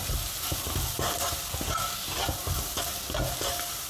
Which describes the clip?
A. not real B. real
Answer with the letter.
B